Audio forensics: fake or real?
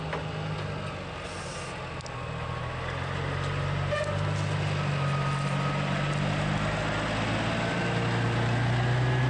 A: real